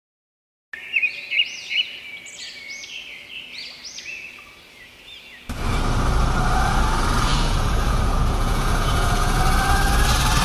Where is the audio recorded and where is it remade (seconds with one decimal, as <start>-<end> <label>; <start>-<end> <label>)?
0.0-7.3 recorded; 7.3-9.4 remade; 9.4-10.4 recorded